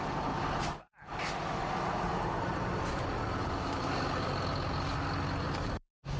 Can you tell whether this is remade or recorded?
recorded